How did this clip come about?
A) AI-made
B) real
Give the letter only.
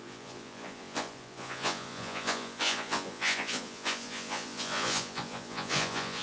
A